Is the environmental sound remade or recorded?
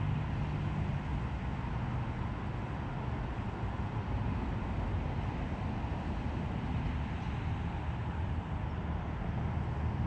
recorded